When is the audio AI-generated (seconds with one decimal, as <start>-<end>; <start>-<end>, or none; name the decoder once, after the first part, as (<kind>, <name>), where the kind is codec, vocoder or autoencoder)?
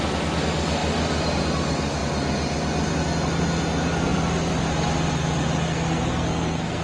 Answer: 5.7-6.8 (codec, SNAC)